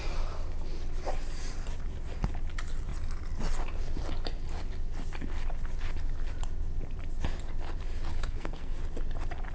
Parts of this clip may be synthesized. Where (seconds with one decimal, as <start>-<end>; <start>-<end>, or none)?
8.1-8.8

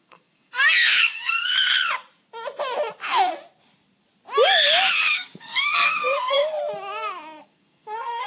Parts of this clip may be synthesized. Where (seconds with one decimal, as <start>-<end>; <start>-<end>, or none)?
0.0-1.5; 5.1-6.4; 7.4-8.3

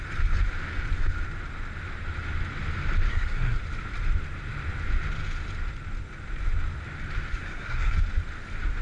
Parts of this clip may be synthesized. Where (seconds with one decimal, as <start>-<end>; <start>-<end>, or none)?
3.1-3.6; 7.3-7.9

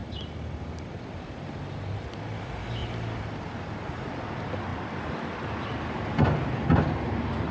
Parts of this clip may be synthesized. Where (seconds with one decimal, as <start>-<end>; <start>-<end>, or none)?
0.0-1.9; 4.7-5.3